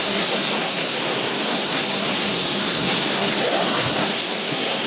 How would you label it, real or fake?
fake